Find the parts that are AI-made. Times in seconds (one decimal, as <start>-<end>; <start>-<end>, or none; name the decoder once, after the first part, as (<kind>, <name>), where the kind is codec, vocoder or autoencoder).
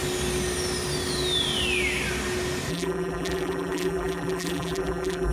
2.7-5.3 (vocoder, BigVGAN v2)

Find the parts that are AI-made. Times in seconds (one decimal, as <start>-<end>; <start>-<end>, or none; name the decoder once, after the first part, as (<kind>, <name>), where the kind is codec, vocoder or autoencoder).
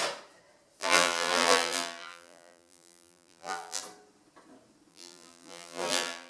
0.8-3.8 (vocoder, BigVGAN v2); 4.9-6.3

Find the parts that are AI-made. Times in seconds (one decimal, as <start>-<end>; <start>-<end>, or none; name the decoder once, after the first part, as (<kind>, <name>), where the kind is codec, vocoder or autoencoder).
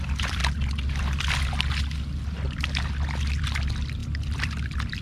0.0-0.4 (vocoder, BigVGAN v2); 3.4-5.0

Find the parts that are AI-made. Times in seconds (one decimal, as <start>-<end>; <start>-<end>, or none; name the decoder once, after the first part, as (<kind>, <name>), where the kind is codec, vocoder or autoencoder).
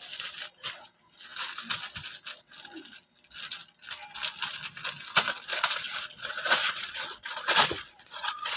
5.5-8.6 (vocoder, Vocos)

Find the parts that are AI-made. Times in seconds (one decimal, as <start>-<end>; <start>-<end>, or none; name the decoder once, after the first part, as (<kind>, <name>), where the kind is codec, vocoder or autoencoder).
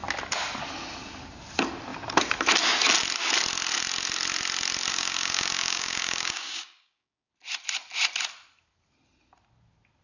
4.9-7.3 (codec, DAC)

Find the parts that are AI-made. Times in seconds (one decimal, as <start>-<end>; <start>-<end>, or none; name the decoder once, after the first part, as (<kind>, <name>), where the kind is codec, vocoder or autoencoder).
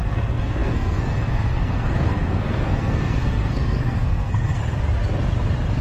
0.0-4.6 (codec, SNAC)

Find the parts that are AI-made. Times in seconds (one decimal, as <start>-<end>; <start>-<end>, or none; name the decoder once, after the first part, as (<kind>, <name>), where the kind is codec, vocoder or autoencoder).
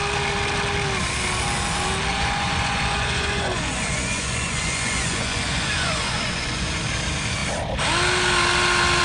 2.1-6.8 (vocoder, Vocos)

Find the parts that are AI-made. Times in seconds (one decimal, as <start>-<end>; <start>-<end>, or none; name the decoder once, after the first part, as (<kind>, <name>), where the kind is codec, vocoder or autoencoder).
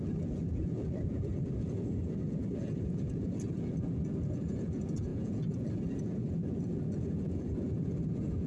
0.0-8.5 (vocoder, Vocos)